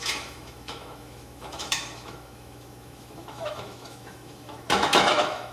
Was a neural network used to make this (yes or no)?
yes